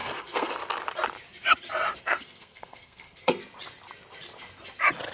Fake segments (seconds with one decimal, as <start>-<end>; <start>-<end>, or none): 0.0-0.5; 2.0-3.4